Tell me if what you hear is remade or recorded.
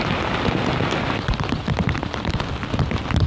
recorded